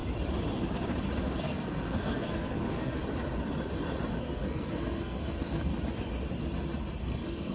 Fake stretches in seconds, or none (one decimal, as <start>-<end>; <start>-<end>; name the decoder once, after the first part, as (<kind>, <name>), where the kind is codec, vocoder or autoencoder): 1.4-3.0 (codec, SNAC); 4.2-5.7; 7.0-7.5